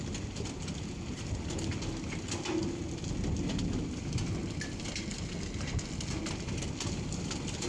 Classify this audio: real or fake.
real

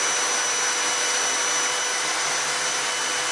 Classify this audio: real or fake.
real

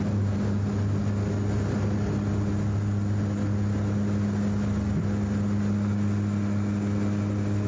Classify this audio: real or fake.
real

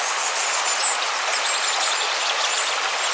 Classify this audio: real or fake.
real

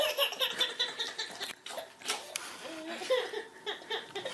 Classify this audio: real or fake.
real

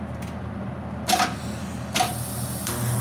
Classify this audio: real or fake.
real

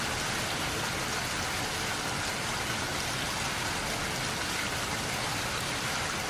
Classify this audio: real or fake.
real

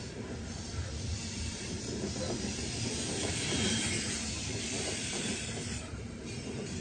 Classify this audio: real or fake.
fake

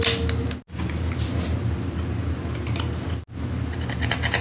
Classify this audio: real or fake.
real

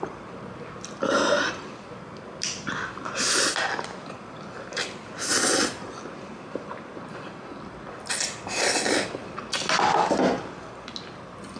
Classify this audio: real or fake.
real